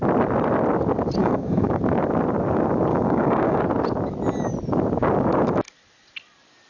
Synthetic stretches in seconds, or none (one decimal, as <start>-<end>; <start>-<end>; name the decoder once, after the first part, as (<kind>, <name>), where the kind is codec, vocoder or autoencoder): 1.2-1.8 (codec, DAC); 2.9-3.6